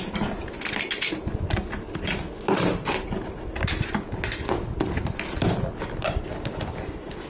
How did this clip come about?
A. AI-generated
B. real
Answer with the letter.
B